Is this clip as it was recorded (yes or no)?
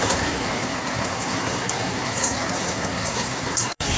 no